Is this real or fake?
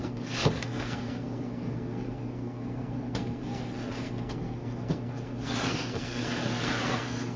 fake